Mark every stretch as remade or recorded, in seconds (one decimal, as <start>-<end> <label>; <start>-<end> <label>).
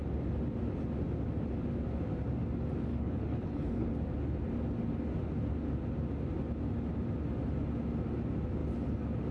0.0-2.9 recorded; 2.9-3.9 remade; 3.9-9.3 recorded